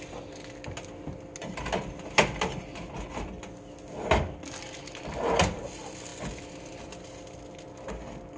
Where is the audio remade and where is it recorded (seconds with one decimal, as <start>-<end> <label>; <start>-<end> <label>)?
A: 0.0-8.4 recorded